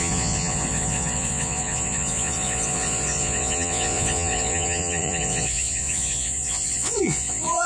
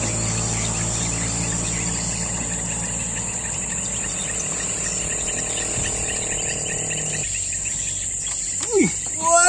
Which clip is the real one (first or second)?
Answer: second